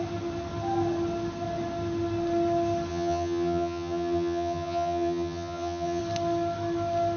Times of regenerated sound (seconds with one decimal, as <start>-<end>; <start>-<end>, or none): 2.9-6.0